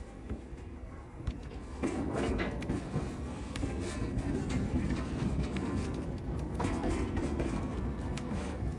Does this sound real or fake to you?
fake